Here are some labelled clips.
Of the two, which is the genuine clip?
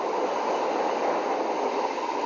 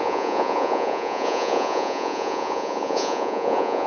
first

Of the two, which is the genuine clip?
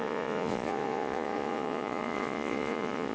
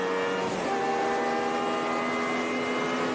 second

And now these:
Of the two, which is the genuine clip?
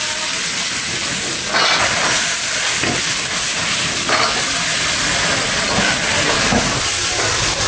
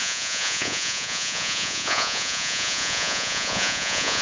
first